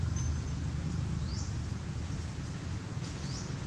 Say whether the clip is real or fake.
fake